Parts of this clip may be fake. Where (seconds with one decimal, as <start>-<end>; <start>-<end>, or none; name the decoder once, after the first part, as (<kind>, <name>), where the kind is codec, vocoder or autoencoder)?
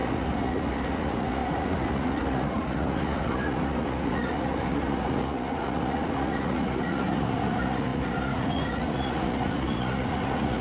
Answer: 0.0-10.6 (vocoder, Vocos)